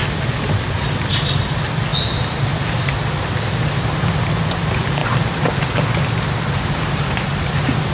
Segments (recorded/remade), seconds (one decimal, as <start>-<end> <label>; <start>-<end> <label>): 0.0-7.9 recorded